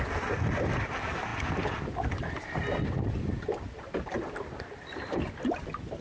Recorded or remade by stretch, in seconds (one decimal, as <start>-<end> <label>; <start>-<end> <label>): 0.0-6.0 recorded